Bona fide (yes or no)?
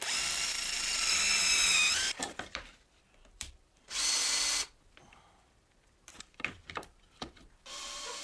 no